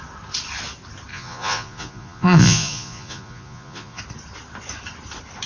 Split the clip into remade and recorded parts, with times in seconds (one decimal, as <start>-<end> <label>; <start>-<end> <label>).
0.0-1.1 recorded; 1.1-4.0 remade; 4.0-5.5 recorded